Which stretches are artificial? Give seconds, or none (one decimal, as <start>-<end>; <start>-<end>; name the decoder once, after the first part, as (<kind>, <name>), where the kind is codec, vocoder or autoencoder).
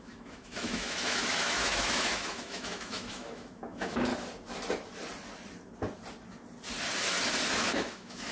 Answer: 0.0-4.1 (autoencoder, DAC-VAE); 7.5-8.3